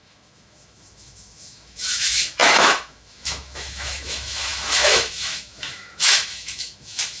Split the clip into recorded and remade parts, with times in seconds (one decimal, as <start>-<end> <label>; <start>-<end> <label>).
0.0-7.2 remade